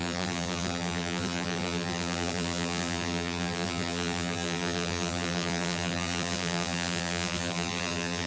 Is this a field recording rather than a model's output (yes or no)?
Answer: no